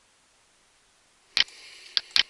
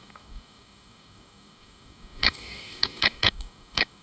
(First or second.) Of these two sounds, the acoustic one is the first